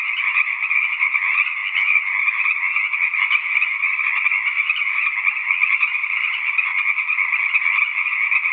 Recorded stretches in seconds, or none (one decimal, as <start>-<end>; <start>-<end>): 0.0-8.5